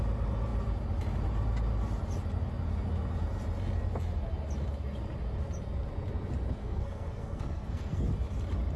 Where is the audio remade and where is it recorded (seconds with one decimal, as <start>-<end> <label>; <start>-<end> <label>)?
0.0-6.6 recorded; 6.6-8.1 remade; 8.1-8.8 recorded